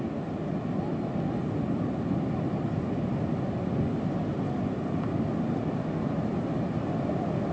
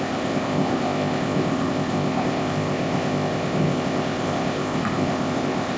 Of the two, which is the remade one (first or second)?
second